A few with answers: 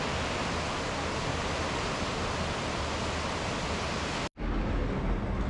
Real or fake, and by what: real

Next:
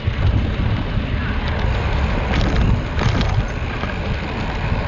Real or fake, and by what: real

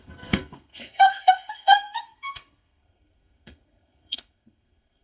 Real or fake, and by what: fake, codec, SNAC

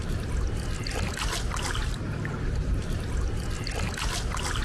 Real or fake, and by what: real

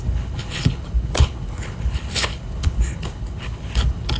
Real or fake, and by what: fake, codec, HILCodec